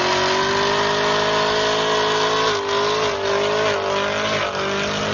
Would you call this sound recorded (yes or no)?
yes